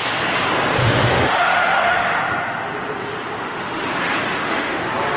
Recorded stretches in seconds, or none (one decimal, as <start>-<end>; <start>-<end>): 0.0-0.8; 2.2-3.4; 3.9-4.3; 4.8-5.2